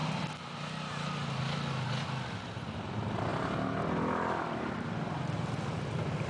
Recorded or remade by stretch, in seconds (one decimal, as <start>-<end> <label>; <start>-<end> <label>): 0.0-6.3 recorded